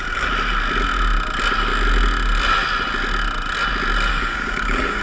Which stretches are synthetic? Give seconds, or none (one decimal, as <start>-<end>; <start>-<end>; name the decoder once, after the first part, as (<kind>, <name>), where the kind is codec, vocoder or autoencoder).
4.1-5.0 (codec, DAC)